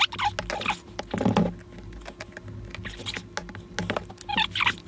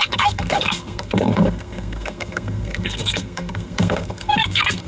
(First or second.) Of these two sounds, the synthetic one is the second